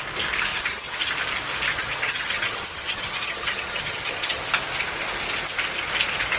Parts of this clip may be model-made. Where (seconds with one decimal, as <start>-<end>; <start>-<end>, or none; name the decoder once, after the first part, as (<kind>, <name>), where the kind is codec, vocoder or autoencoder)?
0.5-1.1 (vocoder, HiFi-GAN); 1.7-4.4